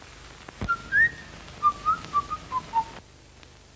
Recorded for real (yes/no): yes